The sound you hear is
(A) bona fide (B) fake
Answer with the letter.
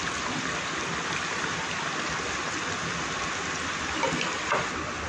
A